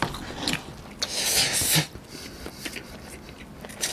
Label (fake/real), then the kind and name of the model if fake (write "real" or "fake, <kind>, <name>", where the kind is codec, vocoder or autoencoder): real